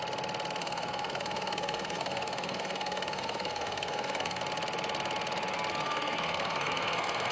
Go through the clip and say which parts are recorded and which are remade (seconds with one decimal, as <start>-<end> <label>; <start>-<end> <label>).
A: 0.0-0.6 recorded; 0.6-4.4 remade; 4.4-5.8 recorded; 5.8-7.3 remade